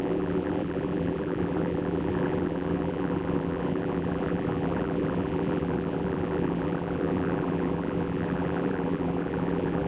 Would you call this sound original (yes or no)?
no